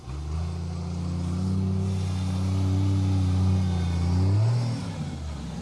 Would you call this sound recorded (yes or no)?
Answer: yes